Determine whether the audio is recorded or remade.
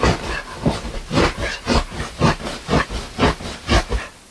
recorded